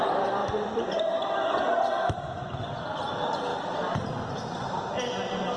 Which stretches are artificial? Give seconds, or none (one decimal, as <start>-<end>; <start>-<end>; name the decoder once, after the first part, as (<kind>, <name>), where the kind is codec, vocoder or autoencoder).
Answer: 0.4-1.0 (vocoder, BigVGAN v2); 2.3-3.1; 3.5-4.0